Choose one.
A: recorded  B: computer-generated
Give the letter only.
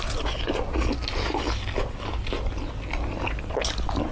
A